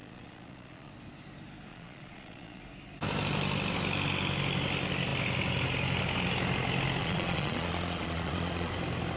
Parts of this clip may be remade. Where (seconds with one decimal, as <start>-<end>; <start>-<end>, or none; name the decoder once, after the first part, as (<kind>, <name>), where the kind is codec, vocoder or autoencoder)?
0.0-0.9 (vocoder, Vocos); 1.7-2.6; 7.0-8.7